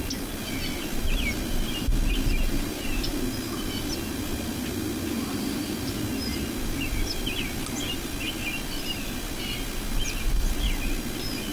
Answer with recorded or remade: recorded